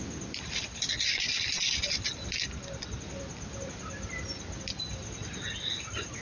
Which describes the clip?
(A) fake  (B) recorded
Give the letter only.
B